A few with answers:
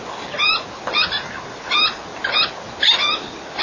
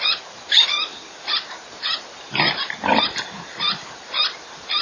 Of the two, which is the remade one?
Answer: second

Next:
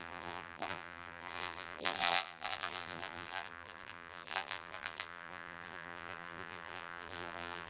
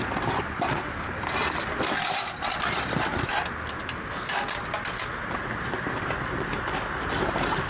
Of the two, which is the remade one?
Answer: first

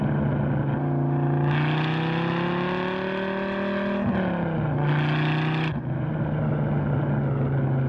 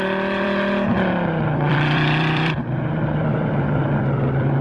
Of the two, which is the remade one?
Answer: second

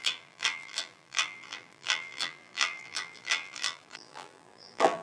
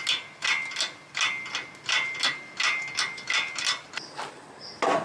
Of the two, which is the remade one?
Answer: first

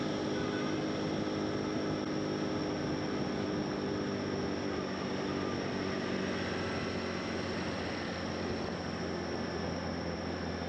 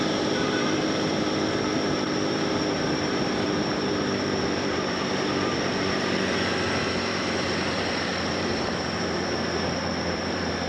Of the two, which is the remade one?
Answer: second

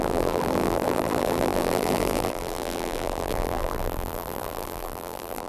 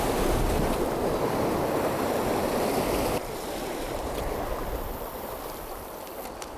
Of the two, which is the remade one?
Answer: first